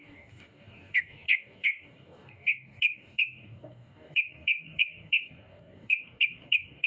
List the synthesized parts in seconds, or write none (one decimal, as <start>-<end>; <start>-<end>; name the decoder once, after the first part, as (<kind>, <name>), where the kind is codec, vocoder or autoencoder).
0.0-6.9 (codec, DAC)